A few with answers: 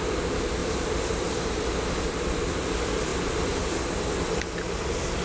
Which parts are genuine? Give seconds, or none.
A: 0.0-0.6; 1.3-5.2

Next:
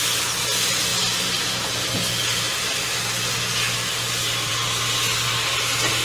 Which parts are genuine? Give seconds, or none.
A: 0.0-6.0

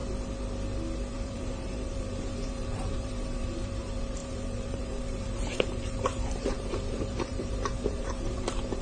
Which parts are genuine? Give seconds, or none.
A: 0.0-1.1

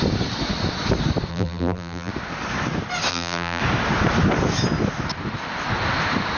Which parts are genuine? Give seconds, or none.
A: 0.0-1.3; 2.1-3.1; 3.6-6.4

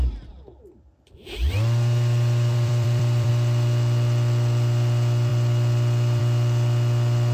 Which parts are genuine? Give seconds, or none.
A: 0.0-0.9; 3.3-7.3

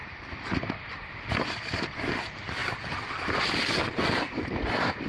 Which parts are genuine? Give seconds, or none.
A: 0.7-5.1